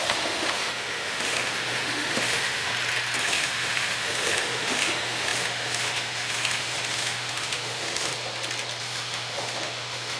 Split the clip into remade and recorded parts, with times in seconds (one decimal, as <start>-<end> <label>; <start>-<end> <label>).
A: 0.0-2.7 remade; 2.7-3.2 recorded; 3.2-8.1 remade; 8.1-8.8 recorded; 8.8-10.2 remade